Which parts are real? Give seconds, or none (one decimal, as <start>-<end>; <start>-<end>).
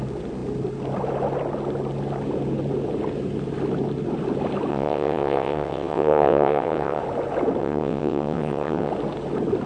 0.0-4.7; 7.0-7.6; 8.9-9.7